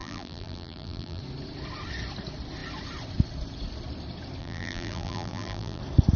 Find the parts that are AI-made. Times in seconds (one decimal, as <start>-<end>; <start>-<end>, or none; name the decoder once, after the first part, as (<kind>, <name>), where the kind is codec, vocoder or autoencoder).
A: 0.0-1.2 (vocoder, BigVGAN v2); 4.4-5.8